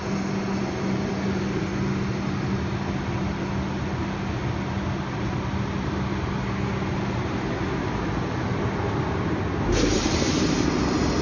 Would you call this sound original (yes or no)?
yes